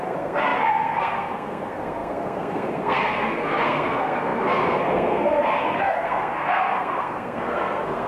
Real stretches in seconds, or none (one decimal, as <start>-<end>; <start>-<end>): none